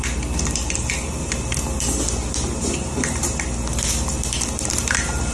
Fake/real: real